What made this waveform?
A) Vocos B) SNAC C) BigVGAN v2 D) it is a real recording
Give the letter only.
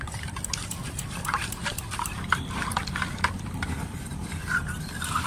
C